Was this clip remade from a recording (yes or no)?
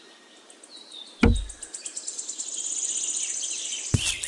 no